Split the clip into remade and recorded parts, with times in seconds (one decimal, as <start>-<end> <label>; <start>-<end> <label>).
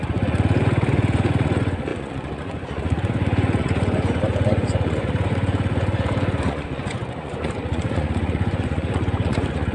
0.0-9.7 remade